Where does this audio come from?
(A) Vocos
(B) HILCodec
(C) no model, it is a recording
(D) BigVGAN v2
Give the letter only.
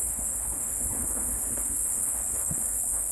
B